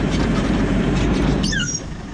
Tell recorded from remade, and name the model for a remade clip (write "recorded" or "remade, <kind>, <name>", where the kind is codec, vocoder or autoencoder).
remade, vocoder, BigVGAN v2